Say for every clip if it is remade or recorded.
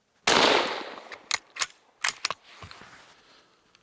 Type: recorded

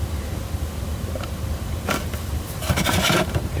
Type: recorded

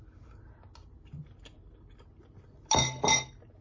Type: recorded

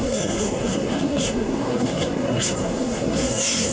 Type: remade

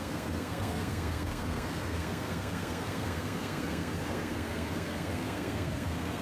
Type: remade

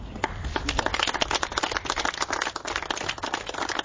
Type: recorded